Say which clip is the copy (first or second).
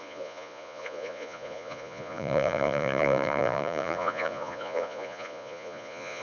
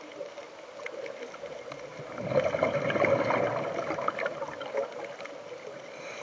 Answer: first